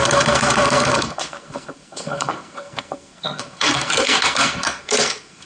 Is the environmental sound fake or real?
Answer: fake